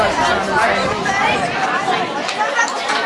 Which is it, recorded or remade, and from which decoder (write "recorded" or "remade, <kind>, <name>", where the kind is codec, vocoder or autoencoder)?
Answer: recorded